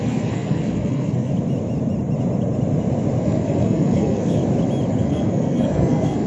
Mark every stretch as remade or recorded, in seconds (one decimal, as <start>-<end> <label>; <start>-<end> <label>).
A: 0.0-1.3 remade; 1.3-3.2 recorded; 3.2-4.4 remade; 4.4-4.9 recorded; 4.9-6.3 remade